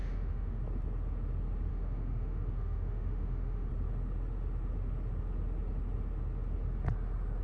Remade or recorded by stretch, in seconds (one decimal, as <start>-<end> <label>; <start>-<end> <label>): 0.0-0.6 remade; 0.6-1.7 recorded; 1.7-3.7 remade; 3.7-7.4 recorded